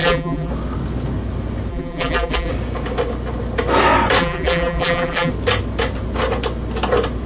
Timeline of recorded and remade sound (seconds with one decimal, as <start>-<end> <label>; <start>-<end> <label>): 0.0-0.5 remade; 0.5-1.7 recorded; 1.7-2.5 remade; 2.5-4.2 recorded; 4.2-5.3 remade; 5.3-7.3 recorded